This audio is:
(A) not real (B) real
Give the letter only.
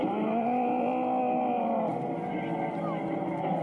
B